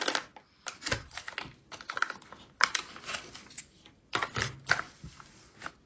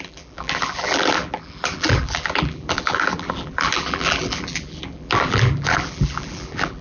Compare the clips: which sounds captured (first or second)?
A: first